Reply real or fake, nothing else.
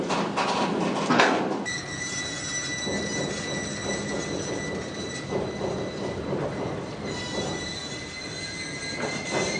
real